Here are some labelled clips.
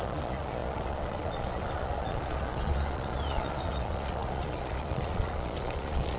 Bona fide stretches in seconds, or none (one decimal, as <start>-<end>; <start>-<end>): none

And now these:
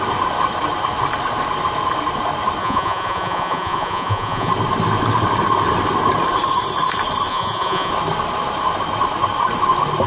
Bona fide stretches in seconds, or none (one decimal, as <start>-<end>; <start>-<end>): 0.0-2.6; 4.5-7.3; 7.9-10.1

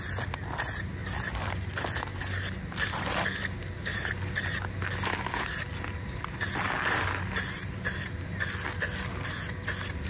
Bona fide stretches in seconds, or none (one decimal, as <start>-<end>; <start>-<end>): 0.0-10.1

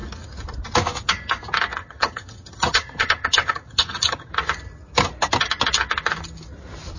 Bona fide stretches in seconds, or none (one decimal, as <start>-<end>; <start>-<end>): 0.0-1.8; 4.3-7.0

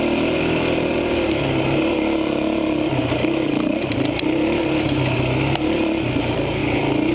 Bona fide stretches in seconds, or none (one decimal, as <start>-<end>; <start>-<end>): 6.6-7.1

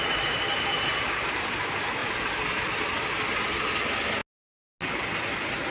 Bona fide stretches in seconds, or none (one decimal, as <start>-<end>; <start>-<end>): 0.0-5.7

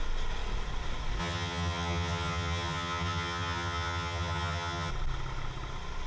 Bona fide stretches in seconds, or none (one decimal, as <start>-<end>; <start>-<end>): 0.0-1.2; 4.9-6.1

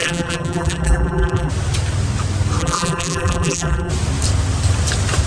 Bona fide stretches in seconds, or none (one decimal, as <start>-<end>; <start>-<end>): 1.5-2.6; 3.9-5.3